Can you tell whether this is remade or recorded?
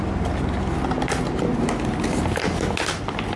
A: recorded